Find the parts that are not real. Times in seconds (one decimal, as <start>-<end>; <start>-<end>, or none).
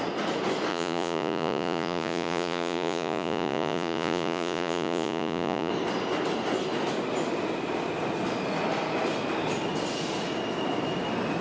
0.7-5.7